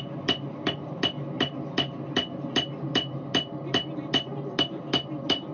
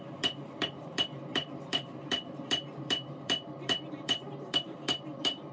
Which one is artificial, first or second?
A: second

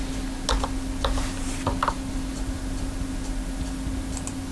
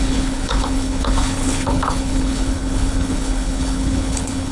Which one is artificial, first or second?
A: second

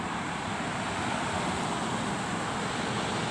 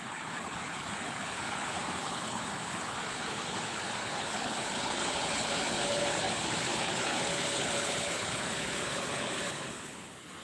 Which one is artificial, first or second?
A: second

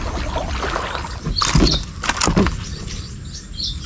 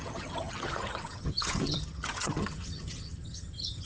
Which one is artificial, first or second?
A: second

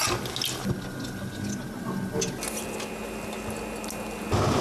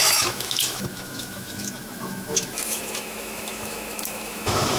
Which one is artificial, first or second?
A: second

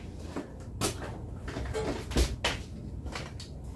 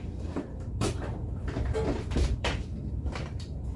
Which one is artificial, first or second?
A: second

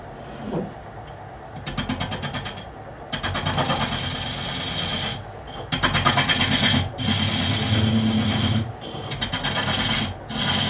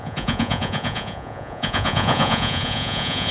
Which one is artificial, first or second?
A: second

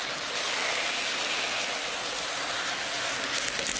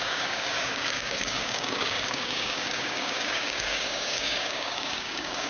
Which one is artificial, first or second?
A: second